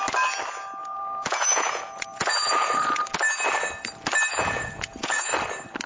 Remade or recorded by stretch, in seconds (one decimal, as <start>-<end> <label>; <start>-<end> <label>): 0.0-0.8 recorded; 0.8-3.0 remade; 3.0-4.3 recorded; 4.3-5.3 remade; 5.3-5.9 recorded